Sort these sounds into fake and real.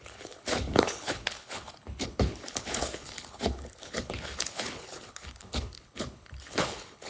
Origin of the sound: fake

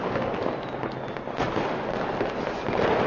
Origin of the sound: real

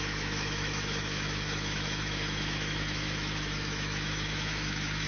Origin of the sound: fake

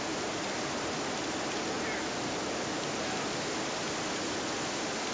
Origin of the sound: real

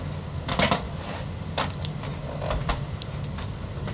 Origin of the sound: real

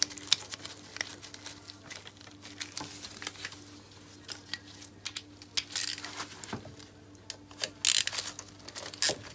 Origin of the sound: real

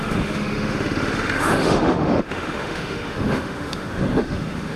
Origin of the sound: fake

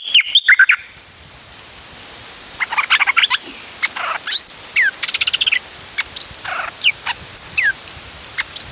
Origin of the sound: real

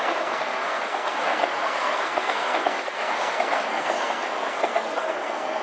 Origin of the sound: fake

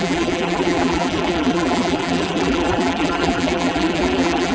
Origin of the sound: fake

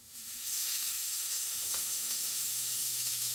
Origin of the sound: fake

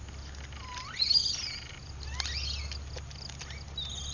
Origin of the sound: real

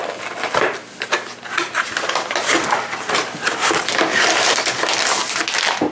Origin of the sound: real